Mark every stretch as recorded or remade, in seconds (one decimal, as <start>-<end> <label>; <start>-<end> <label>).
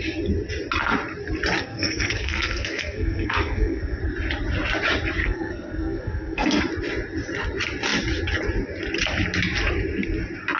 0.0-1.6 recorded; 1.6-4.0 remade; 4.0-5.2 recorded; 5.2-6.6 remade; 6.6-10.6 recorded